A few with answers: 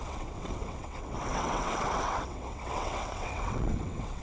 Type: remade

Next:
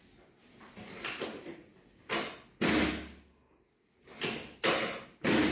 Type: recorded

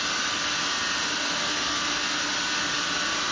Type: recorded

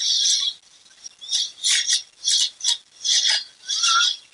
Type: recorded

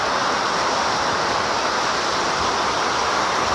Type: recorded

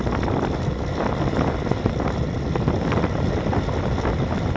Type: recorded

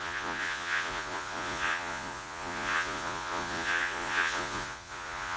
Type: remade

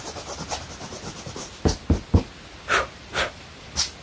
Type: recorded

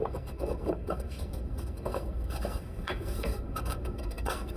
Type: remade